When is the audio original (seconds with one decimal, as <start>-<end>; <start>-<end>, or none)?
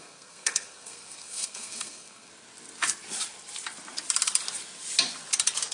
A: 2.3-5.7